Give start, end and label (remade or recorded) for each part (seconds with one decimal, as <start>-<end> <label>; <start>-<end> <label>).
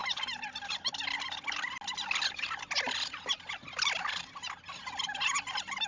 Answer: 0.0-5.9 recorded